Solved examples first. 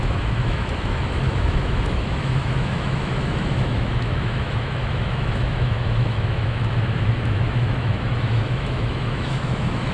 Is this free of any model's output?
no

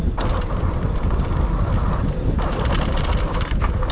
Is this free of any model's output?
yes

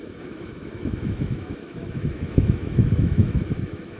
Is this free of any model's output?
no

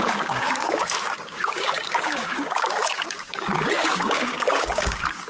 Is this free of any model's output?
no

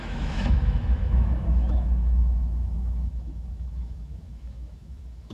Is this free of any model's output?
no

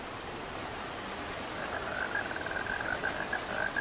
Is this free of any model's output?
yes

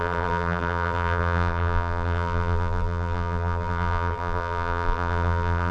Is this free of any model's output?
no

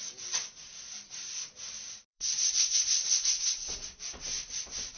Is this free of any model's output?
no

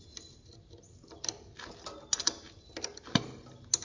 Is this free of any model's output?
yes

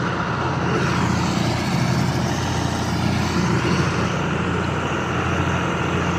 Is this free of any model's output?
yes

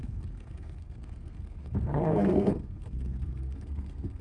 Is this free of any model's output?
no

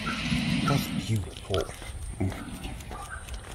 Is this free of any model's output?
yes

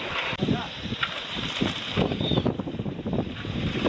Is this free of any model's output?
no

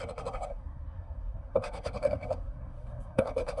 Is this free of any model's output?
no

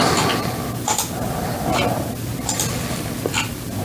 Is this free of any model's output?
yes